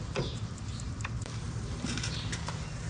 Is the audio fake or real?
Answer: fake